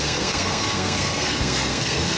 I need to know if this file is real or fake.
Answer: fake